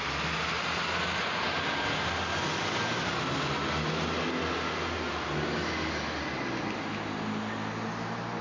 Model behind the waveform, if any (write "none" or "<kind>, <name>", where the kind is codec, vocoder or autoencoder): none